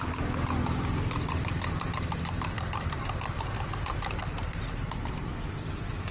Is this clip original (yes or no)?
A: no